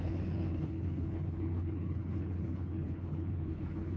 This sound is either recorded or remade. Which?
remade